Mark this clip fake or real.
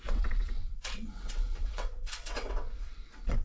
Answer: fake